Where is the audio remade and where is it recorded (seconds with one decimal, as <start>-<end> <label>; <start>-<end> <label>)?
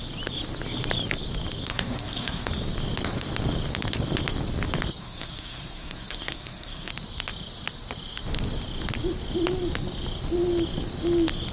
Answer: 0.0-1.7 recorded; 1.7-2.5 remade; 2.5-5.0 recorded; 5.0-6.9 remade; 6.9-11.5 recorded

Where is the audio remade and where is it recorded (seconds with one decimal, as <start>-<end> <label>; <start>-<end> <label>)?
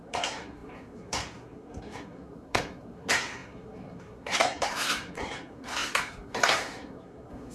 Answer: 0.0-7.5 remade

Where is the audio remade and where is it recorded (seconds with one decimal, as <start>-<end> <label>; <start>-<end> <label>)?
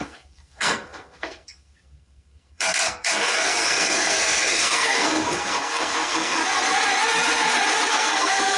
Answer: 0.0-6.4 remade; 6.4-7.9 recorded; 7.9-8.6 remade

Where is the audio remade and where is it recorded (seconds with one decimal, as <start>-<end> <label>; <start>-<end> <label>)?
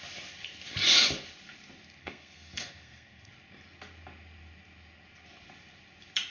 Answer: 0.0-2.0 recorded; 2.0-3.3 remade; 3.3-6.3 recorded